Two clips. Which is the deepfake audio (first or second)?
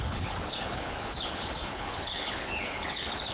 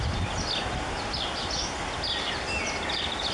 first